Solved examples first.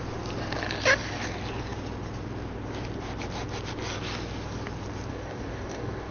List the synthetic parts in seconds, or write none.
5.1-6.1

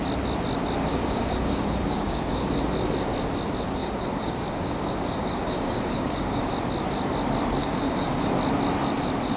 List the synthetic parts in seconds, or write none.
0.9-2.5; 3.8-6.4; 7.6-8.3

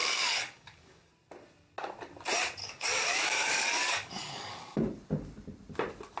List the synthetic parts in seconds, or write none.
0.0-1.1; 2.6-4.8

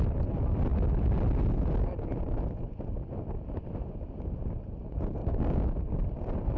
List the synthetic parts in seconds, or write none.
5.2-6.0

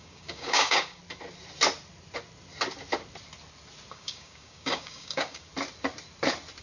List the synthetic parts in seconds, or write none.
0.0-1.0; 3.9-5.5

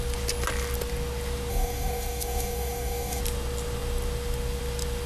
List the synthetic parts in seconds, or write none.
1.5-3.2

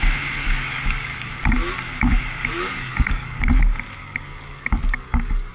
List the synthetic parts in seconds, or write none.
0.4-1.3; 2.4-3.6; 4.0-5.5

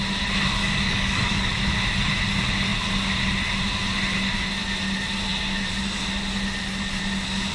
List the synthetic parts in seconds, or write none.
0.6-1.5